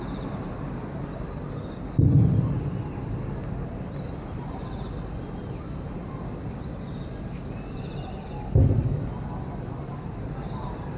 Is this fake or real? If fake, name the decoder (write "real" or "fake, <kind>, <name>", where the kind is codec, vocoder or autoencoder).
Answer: real